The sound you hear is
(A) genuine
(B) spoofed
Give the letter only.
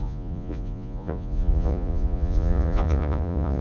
B